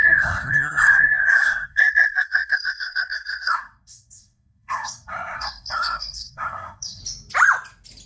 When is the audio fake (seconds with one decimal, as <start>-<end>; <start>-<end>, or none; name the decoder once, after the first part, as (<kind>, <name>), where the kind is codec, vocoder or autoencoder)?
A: 0.0-7.0 (codec, SNAC)